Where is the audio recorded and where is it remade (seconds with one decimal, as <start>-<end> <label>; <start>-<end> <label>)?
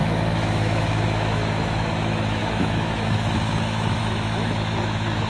0.0-5.3 remade